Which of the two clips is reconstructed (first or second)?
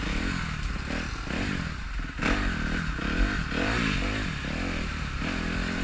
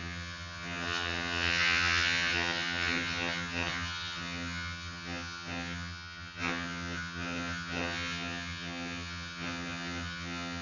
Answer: second